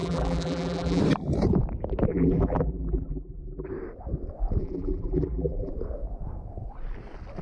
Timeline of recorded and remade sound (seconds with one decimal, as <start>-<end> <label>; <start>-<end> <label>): 0.0-1.0 remade; 1.0-2.1 recorded; 2.1-3.7 remade; 3.7-4.6 recorded; 4.6-5.7 remade; 5.7-7.4 recorded